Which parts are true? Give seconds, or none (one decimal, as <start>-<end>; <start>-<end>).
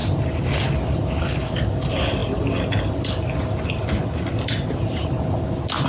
0.0-5.9